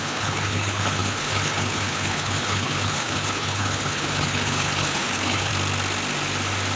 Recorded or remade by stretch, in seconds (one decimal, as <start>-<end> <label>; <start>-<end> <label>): 0.0-5.5 remade; 5.5-6.8 recorded